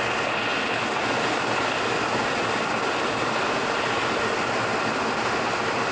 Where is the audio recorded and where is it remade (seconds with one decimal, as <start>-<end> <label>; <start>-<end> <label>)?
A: 0.0-5.9 recorded